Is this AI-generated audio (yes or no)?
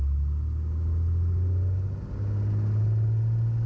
no